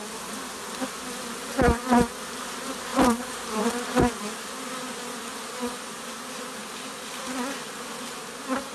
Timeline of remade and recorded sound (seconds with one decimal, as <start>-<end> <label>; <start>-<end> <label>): 0.0-2.9 recorded; 2.9-3.6 remade; 3.6-8.7 recorded